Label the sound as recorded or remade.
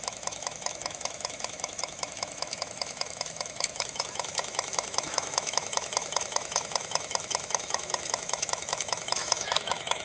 remade